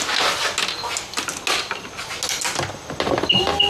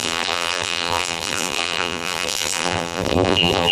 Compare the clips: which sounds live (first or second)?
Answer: first